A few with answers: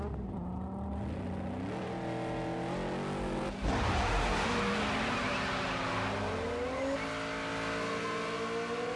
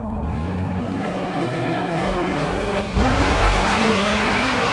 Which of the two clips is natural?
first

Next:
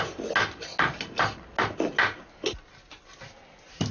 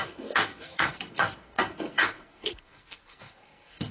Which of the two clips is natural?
first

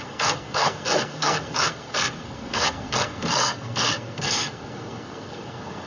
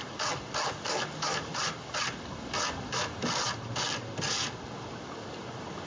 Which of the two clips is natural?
second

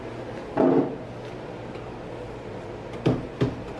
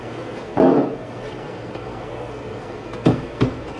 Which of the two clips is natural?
first